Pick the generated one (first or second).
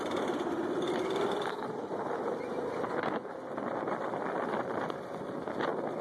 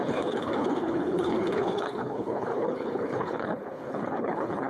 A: second